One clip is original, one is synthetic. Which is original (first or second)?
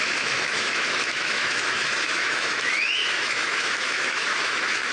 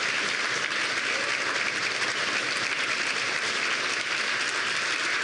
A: second